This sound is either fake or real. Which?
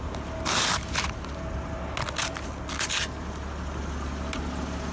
real